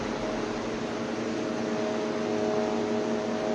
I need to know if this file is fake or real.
real